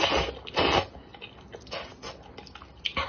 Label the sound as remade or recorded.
recorded